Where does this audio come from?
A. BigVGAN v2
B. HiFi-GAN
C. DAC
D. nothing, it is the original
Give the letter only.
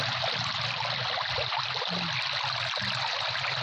D